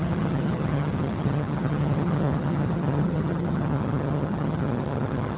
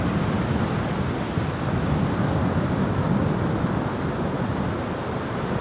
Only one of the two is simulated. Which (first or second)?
first